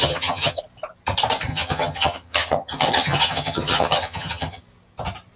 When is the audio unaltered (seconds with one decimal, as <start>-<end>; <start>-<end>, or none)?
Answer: 0.6-1.5; 4.6-5.4